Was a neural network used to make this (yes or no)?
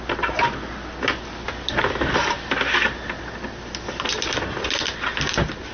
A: no